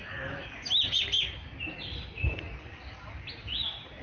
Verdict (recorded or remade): recorded